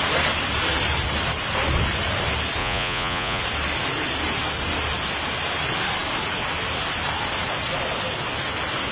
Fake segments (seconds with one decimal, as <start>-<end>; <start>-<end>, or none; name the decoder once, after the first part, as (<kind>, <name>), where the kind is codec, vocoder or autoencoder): 2.6-3.4 (vocoder, Vocos)